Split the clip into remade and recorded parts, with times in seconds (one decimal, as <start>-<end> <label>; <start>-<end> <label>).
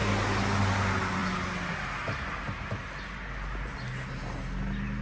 0.0-5.0 recorded